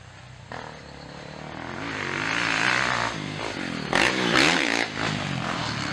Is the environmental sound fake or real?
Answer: real